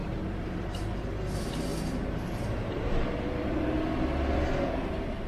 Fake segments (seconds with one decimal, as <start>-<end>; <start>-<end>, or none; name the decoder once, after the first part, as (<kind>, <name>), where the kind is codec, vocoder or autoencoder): 0.0-0.9 (vocoder, BigVGAN v2); 1.7-3.8